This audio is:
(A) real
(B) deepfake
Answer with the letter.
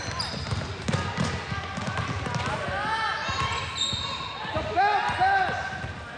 A